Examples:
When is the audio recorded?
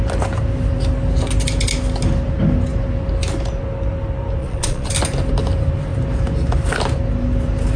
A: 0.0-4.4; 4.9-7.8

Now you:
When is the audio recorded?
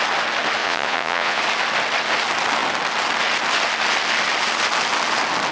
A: 0.0-0.6; 1.4-5.5